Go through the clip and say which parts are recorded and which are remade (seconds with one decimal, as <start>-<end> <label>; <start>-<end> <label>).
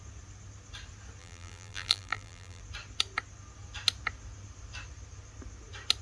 0.0-1.2 recorded; 1.2-2.6 remade; 2.6-6.0 recorded